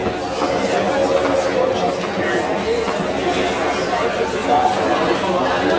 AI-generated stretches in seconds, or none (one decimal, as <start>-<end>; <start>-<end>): none